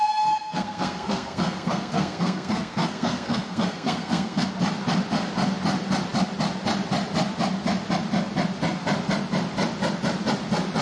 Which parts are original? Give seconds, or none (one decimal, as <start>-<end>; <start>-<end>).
4.5-10.8

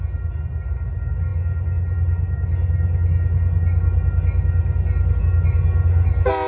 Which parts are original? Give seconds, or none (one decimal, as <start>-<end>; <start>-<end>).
0.0-6.5